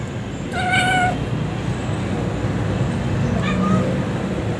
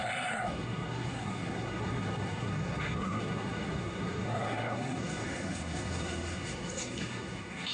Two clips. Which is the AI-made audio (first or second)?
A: second